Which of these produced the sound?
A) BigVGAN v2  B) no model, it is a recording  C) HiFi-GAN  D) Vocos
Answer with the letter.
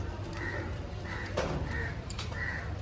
A